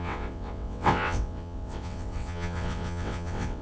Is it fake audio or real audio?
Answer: fake